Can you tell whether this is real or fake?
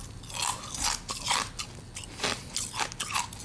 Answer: real